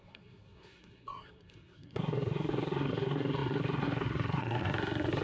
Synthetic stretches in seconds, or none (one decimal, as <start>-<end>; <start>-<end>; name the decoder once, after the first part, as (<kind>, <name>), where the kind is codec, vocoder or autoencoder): 0.0-5.2 (codec, SNAC)